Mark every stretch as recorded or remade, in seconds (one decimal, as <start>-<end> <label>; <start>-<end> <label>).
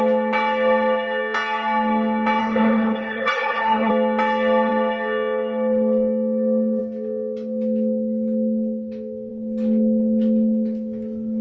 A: 0.0-2.4 recorded; 2.4-3.9 remade; 3.9-11.4 recorded